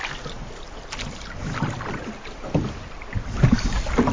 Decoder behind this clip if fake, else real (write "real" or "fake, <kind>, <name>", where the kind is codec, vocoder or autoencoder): real